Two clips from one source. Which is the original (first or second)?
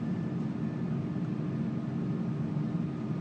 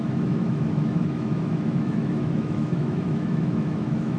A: first